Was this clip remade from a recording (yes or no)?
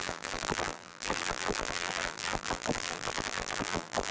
yes